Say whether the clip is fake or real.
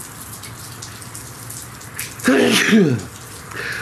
real